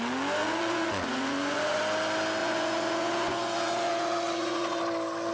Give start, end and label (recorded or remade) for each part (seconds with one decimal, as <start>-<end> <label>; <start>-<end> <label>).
0.0-0.4 recorded; 0.4-1.8 remade; 1.8-2.4 recorded; 2.4-4.8 remade; 4.8-5.3 recorded

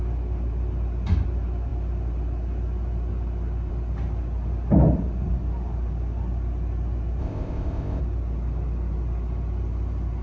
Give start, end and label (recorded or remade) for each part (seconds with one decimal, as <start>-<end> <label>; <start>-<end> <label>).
0.0-7.2 recorded; 7.2-8.0 remade; 8.0-10.2 recorded

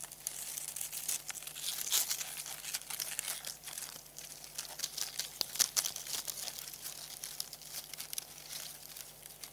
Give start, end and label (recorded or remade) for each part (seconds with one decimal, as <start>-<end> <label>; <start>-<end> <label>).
0.0-9.5 recorded

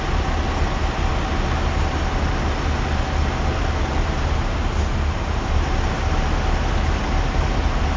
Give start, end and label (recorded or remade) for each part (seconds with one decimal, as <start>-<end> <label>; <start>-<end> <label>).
0.0-8.0 recorded

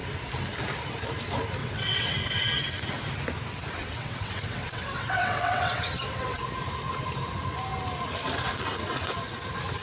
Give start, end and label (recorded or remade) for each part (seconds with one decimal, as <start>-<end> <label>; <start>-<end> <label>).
0.0-1.6 recorded; 1.6-2.1 remade; 2.1-3.8 recorded; 3.8-6.4 remade; 6.4-9.8 recorded